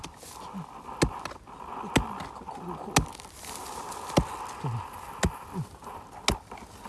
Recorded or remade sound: recorded